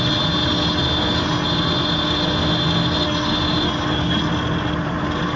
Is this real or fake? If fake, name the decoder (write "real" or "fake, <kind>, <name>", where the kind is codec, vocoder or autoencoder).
real